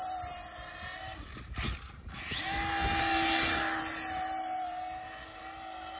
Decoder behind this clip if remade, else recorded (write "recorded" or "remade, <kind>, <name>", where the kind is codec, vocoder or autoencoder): recorded